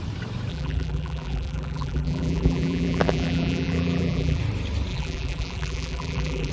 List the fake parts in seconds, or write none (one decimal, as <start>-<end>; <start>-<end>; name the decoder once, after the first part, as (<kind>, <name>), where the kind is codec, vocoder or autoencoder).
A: 0.5-4.4 (vocoder, BigVGAN v2); 4.9-6.5